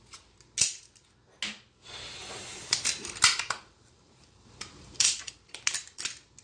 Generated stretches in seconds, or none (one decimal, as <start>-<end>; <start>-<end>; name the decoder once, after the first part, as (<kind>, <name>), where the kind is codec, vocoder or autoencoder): 2.2-6.0 (vocoder, BigVGAN v2)